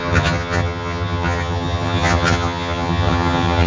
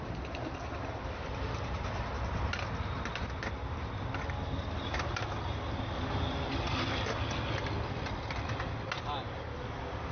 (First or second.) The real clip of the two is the second